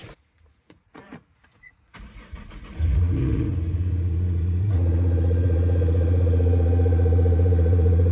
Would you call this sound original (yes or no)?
no